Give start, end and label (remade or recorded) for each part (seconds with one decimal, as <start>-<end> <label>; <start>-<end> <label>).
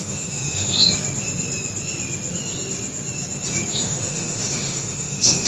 0.0-0.7 remade; 0.7-3.7 recorded; 3.7-5.5 remade